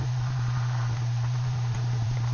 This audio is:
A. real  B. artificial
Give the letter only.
B